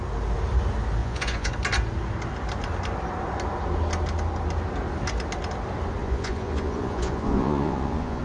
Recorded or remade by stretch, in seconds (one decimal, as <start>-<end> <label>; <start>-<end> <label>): 0.0-1.0 recorded; 1.0-1.5 remade; 1.5-6.0 recorded; 6.0-8.2 remade

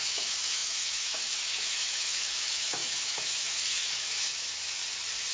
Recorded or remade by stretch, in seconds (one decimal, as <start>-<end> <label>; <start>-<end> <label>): 0.0-4.8 remade; 4.8-5.3 recorded

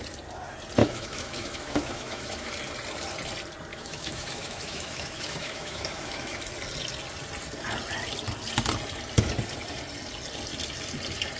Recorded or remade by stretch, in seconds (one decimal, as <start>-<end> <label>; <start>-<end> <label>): 0.0-0.8 recorded; 0.8-2.5 remade; 2.5-3.7 recorded; 3.7-6.4 remade; 6.4-11.4 recorded

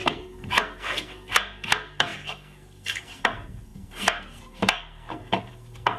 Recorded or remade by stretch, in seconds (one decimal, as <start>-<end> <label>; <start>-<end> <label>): 0.0-6.0 remade

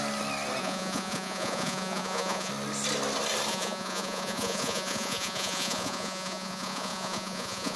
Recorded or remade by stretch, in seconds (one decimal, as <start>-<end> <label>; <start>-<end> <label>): 0.0-0.6 recorded; 0.6-2.5 remade; 2.5-3.5 recorded; 3.5-7.8 remade

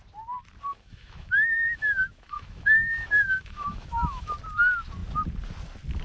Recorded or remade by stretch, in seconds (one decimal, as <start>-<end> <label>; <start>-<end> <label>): 0.0-0.7 recorded; 0.7-4.3 remade; 4.3-6.0 recorded

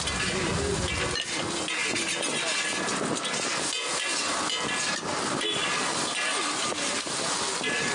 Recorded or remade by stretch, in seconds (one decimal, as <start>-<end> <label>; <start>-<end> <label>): 0.0-7.9 recorded